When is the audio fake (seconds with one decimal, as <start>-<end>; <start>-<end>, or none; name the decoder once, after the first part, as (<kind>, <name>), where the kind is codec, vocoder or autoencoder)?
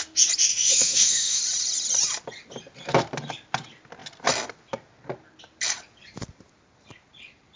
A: 0.5-1.4 (autoencoder, DAC-VAE)